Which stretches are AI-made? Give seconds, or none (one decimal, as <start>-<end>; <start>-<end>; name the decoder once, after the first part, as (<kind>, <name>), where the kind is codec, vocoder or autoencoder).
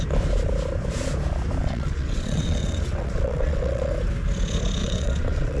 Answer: 1.6-3.9 (vocoder, WaveNeXt); 4.8-5.6